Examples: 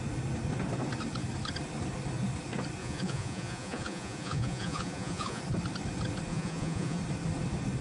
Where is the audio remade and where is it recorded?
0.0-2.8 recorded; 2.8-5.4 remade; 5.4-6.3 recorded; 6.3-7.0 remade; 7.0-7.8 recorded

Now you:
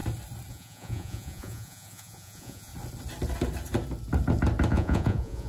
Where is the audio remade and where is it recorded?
0.0-0.5 recorded; 0.5-2.7 remade; 2.7-4.7 recorded; 4.7-5.5 remade